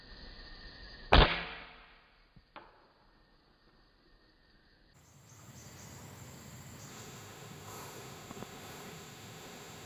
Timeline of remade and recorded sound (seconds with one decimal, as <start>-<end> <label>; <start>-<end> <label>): 0.0-6.9 recorded; 6.9-9.9 remade